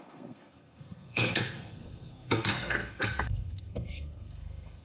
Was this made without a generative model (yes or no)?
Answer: no